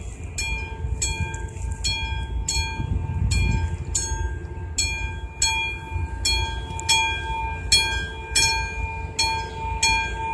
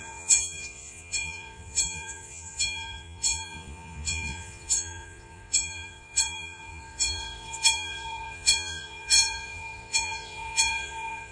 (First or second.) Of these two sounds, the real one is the first